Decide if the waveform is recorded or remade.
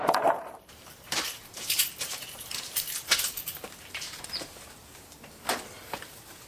remade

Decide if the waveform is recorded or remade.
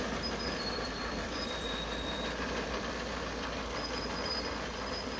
remade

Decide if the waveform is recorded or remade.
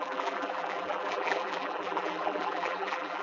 remade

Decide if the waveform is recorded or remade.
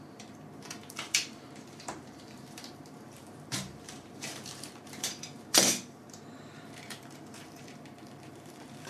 remade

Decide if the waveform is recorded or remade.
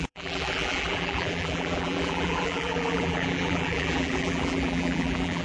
remade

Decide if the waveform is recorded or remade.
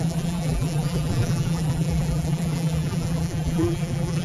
remade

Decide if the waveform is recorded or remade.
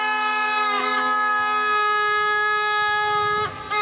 recorded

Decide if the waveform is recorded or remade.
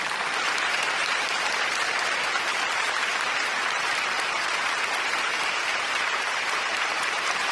remade